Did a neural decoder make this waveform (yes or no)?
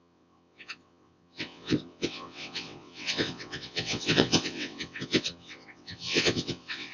yes